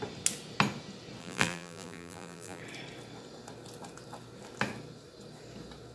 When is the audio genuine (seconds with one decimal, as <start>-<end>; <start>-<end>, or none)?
0.0-1.2; 2.6-5.9